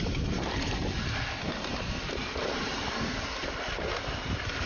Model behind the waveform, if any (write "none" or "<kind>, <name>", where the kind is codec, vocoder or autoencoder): none